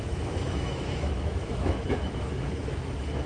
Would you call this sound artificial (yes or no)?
yes